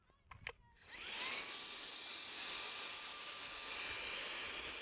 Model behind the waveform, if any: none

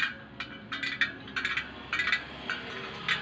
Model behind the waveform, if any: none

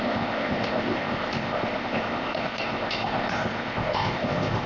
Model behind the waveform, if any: codec, ZipCodec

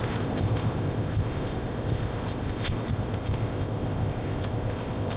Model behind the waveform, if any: codec, ZipCodec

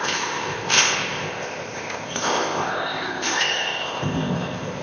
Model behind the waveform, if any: codec, ZipCodec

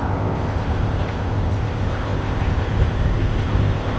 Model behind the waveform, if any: codec, ZipCodec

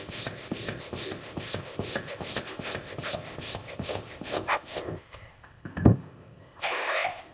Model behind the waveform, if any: codec, ZipCodec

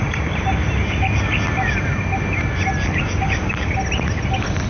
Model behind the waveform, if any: none